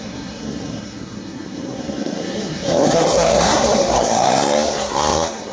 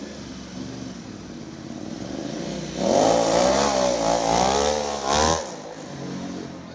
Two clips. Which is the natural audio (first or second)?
second